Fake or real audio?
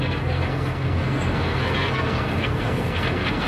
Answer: fake